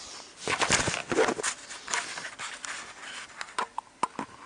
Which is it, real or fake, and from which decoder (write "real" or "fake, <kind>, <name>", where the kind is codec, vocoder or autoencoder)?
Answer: real